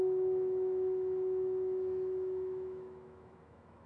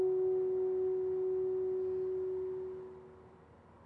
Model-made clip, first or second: first